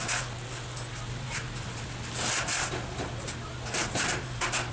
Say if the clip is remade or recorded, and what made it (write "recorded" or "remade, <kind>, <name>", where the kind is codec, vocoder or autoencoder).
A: recorded